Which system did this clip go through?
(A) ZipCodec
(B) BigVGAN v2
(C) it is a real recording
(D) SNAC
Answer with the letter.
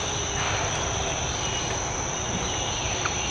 C